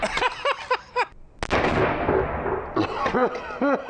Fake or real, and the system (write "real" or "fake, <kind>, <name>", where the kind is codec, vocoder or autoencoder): real